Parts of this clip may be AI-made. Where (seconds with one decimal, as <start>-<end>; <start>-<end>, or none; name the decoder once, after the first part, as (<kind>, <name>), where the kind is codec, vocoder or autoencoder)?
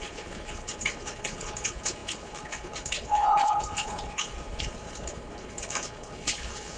0.0-6.8 (codec, HILCodec)